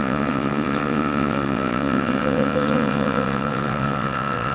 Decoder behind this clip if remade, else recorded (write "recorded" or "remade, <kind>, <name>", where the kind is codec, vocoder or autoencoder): remade, vocoder, WaveNeXt